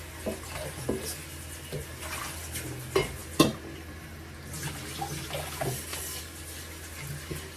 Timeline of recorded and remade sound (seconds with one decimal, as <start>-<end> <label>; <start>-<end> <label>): 0.0-7.6 recorded